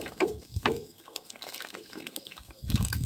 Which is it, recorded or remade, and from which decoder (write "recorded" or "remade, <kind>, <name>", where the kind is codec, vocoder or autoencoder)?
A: remade, codec, SNAC